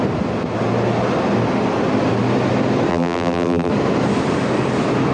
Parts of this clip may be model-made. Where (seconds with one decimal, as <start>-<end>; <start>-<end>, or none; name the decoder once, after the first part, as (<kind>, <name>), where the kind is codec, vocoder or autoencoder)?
2.9-3.7 (vocoder, BigVGAN v2)